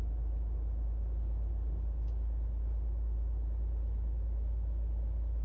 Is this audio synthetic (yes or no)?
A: no